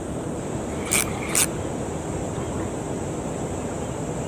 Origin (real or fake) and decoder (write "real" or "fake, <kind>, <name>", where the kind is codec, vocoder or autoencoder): real